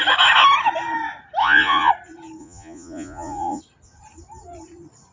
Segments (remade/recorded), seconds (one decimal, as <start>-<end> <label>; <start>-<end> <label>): 0.0-1.4 recorded; 1.4-1.9 remade; 1.9-2.4 recorded; 2.4-3.6 remade; 3.6-5.1 recorded